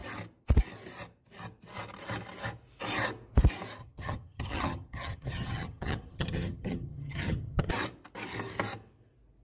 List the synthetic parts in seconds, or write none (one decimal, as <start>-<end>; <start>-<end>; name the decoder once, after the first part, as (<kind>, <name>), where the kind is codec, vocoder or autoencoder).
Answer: 3.8-7.7 (vocoder, HiFi-GAN)